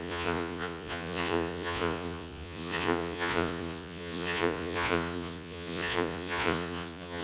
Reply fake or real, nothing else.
fake